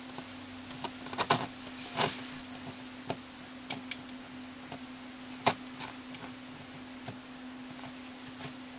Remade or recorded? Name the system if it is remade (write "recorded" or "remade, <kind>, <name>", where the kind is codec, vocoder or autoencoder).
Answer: recorded